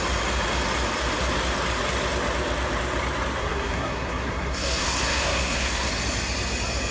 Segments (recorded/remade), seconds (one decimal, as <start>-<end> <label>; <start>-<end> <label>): 0.0-3.4 recorded; 3.4-5.9 remade; 5.9-6.9 recorded